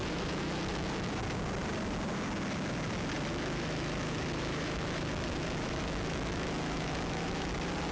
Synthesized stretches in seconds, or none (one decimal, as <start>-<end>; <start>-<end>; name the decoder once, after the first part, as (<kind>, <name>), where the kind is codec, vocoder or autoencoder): 0.0-1.1 (autoencoder, DAC-VAE); 3.3-7.5